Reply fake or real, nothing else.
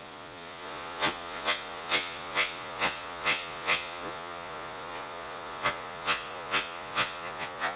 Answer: fake